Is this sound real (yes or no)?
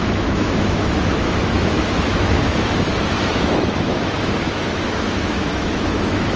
no